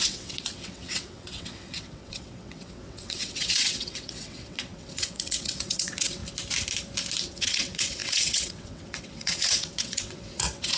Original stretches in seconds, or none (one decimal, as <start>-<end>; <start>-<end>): 6.2-7.3